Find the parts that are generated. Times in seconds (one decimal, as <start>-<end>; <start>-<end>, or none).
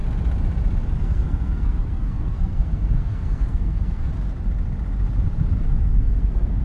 1.0-4.1; 5.6-6.6